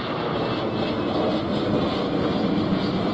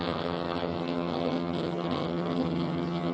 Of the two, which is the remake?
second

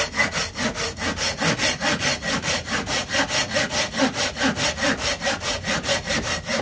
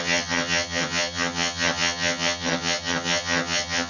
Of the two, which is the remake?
second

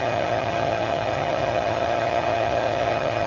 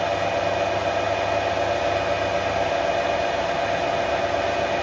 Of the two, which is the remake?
first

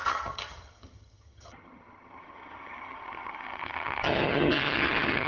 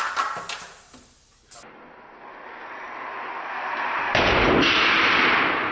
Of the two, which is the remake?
first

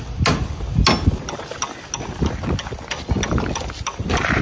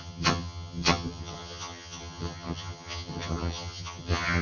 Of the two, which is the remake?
second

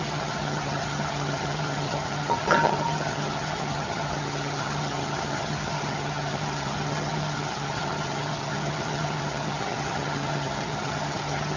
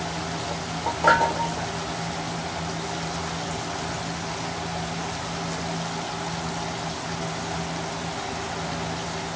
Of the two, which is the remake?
first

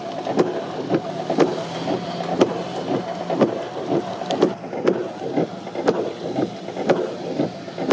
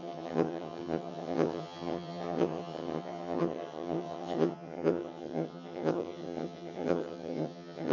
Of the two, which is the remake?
second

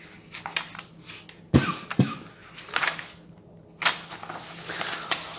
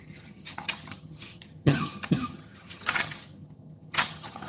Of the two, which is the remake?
second